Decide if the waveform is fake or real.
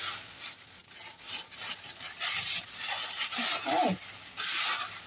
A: real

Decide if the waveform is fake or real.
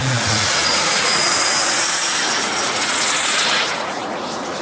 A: fake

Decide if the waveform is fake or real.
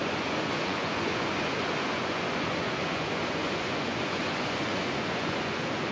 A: fake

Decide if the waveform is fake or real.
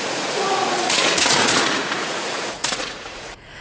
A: fake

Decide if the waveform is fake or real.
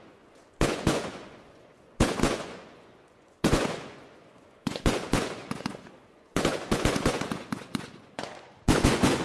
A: fake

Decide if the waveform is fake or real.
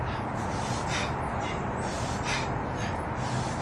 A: real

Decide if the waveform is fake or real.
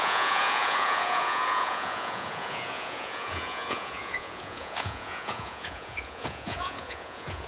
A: fake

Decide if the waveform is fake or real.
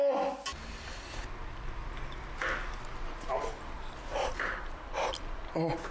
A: real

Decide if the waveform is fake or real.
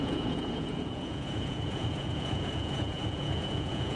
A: fake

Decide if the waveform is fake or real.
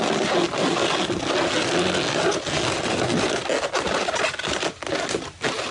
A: real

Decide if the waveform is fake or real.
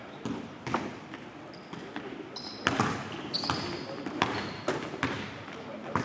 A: real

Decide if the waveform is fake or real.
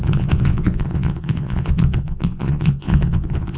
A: fake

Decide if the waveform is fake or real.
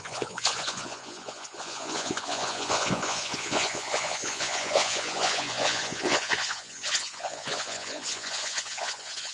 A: fake